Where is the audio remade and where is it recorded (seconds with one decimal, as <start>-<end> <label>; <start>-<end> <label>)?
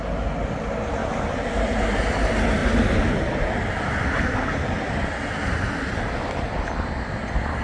0.0-1.0 recorded; 1.0-1.5 remade; 1.5-7.6 recorded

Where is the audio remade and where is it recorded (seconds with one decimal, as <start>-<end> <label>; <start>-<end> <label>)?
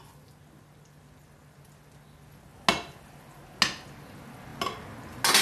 0.0-5.4 recorded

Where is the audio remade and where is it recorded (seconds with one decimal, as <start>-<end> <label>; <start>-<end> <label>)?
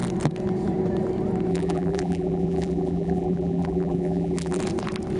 0.0-1.5 recorded; 1.5-4.6 remade; 4.6-5.2 recorded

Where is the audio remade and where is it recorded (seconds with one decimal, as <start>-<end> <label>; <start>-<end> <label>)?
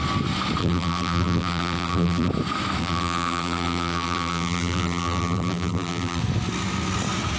0.0-0.6 recorded; 0.6-2.3 remade; 2.3-2.8 recorded; 2.8-6.2 remade; 6.2-7.4 recorded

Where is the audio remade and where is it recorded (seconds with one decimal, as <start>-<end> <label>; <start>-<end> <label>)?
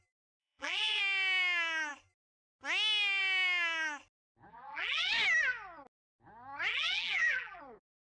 0.0-0.4 recorded; 0.4-1.0 remade; 1.0-4.5 recorded; 4.5-5.1 remade; 5.1-6.7 recorded; 6.7-7.6 remade; 7.6-8.1 recorded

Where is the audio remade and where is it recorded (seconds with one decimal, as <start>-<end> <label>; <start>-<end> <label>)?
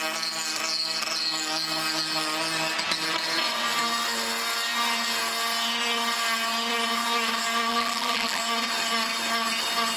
0.0-7.7 recorded; 7.7-8.4 remade; 8.4-10.0 recorded